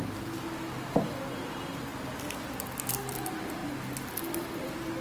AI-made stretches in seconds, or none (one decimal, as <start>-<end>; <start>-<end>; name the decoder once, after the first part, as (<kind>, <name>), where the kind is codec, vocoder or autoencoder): none